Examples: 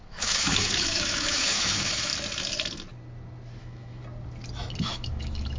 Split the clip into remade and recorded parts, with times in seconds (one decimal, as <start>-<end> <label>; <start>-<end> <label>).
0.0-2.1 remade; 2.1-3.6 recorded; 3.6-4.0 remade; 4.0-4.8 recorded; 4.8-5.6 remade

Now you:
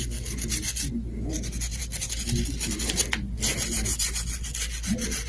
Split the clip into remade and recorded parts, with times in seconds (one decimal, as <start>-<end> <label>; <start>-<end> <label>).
0.0-5.3 recorded

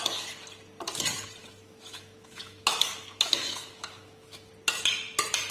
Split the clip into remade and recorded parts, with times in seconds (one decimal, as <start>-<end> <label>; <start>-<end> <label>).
0.0-1.4 recorded; 1.4-4.5 remade; 4.5-5.5 recorded